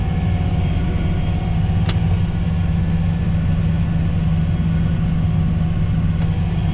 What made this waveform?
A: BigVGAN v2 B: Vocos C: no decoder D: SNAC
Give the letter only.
C